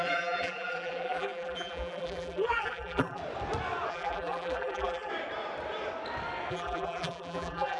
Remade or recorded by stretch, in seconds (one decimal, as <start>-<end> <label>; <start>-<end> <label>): 0.0-3.2 remade; 3.2-3.9 recorded; 3.9-5.1 remade; 5.1-6.5 recorded; 6.5-7.8 remade